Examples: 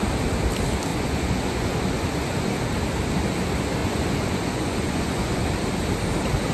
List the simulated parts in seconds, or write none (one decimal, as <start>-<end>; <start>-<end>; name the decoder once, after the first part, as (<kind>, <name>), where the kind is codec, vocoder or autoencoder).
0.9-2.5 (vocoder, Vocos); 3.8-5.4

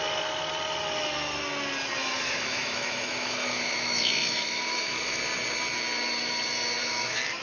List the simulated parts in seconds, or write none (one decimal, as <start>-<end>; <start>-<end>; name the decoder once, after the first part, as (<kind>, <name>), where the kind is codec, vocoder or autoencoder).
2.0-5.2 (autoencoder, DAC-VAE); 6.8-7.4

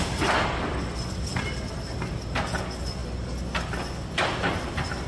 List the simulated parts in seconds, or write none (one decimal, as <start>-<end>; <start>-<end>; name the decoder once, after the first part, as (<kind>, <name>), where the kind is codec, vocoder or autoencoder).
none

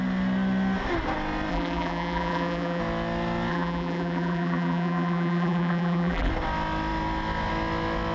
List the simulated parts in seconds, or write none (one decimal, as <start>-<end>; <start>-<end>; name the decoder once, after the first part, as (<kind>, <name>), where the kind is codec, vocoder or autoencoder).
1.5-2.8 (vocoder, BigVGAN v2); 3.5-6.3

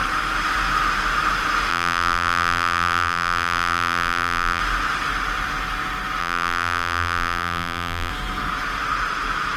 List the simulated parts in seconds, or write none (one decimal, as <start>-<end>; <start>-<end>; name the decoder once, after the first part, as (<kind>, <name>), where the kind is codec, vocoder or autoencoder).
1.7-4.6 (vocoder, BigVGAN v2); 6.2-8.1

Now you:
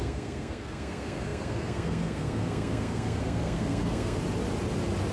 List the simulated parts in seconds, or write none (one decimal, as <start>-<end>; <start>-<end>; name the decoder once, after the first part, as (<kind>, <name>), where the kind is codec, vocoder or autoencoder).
0.0-4.2 (codec, SNAC)